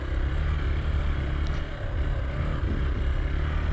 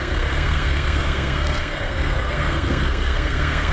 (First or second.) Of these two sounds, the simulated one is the second